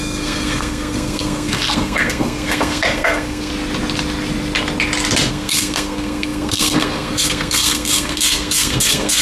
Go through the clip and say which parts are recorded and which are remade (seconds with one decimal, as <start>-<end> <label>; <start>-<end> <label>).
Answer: 0.0-3.5 remade; 3.5-5.3 recorded; 5.3-9.2 remade